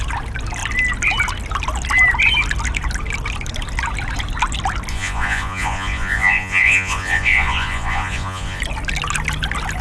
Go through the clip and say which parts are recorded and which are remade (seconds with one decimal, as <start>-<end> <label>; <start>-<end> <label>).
0.0-4.9 recorded; 4.9-8.6 remade; 8.6-9.8 recorded